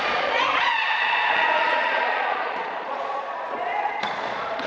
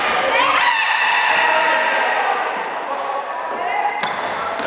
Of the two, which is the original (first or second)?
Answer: second